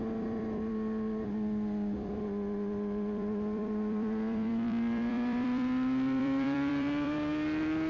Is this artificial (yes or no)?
yes